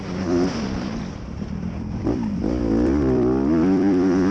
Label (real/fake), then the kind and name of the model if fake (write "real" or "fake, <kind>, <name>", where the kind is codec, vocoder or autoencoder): fake, vocoder, BigVGAN v2